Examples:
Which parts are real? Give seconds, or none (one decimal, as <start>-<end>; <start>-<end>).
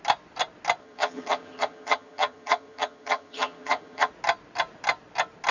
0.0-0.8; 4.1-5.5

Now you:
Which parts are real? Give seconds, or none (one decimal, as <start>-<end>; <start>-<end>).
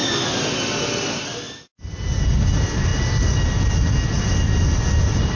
0.0-5.4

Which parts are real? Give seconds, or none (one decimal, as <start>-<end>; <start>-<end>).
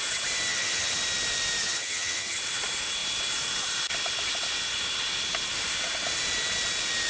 0.0-0.5; 1.0-1.6; 2.4-7.1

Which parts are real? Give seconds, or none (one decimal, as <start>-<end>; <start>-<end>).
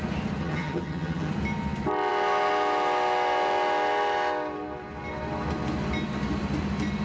0.0-0.4; 1.3-7.0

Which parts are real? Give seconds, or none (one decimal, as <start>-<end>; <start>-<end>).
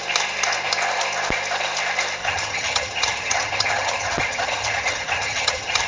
0.0-2.2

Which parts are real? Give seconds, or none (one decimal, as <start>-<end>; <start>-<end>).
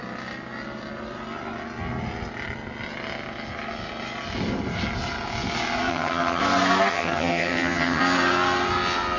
0.0-5.9; 6.4-6.9; 8.0-9.2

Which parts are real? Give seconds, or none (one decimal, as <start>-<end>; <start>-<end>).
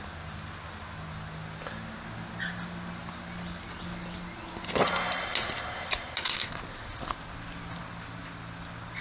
0.0-9.0